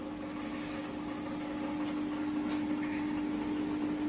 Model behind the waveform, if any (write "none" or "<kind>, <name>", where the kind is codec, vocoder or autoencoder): none